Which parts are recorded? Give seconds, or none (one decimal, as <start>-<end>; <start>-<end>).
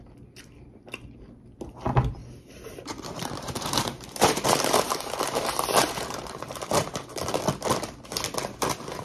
0.0-2.2; 7.4-9.0